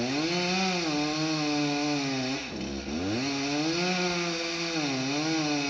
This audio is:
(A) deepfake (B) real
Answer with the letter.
B